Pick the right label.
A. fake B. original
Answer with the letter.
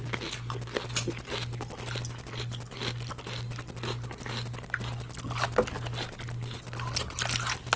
B